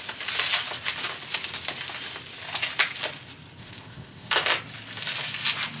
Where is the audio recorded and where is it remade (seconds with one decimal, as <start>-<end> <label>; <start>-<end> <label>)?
0.0-3.6 recorded; 3.6-4.3 remade; 4.3-5.8 recorded